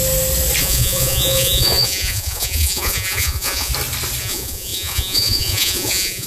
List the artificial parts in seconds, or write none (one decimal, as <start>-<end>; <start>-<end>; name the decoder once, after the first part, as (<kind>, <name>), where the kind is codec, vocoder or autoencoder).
0.6-3.7 (vocoder, Vocos); 4.2-6.3